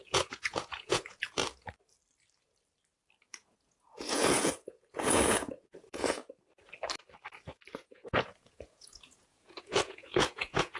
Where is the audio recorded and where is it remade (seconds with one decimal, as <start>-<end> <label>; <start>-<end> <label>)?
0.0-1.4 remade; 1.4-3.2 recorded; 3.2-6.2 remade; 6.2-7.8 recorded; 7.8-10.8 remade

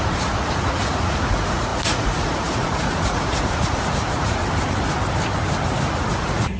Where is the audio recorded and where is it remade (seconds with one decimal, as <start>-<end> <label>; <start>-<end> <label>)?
0.0-4.4 remade; 4.4-6.1 recorded; 6.1-6.6 remade

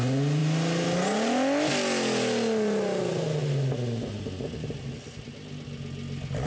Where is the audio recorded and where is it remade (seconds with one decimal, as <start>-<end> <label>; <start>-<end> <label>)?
0.0-6.5 recorded

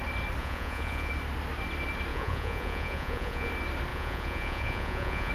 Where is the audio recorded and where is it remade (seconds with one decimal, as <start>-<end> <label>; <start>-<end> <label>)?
0.0-0.4 recorded; 0.4-1.1 remade; 1.1-2.1 recorded; 2.1-3.5 remade; 3.5-3.9 recorded; 3.9-5.3 remade

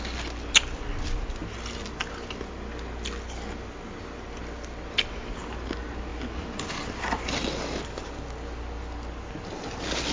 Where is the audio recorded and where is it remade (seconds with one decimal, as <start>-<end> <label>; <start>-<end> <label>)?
0.0-10.1 recorded

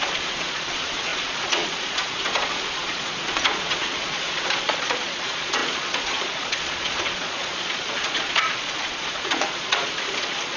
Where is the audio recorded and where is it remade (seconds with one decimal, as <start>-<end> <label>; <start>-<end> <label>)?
0.0-10.6 remade

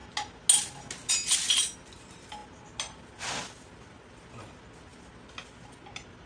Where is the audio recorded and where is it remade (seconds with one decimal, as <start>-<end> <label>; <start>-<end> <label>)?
0.0-6.3 recorded

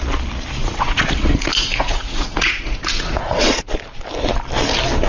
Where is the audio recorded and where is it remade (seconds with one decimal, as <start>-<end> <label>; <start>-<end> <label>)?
0.0-0.6 recorded; 0.6-3.7 remade; 3.7-5.1 recorded